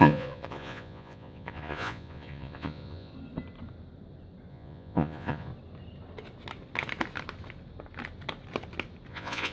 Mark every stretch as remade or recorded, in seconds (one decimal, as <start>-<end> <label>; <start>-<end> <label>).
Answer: 0.0-3.1 remade; 3.1-4.5 recorded; 4.5-5.5 remade; 5.5-9.1 recorded; 9.1-9.5 remade